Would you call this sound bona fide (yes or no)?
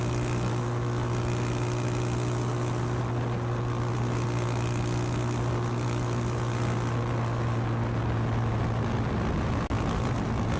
yes